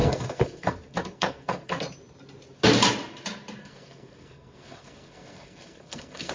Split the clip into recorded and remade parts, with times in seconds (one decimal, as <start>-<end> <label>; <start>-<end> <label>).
0.0-1.8 remade; 1.8-3.6 recorded; 3.6-6.3 remade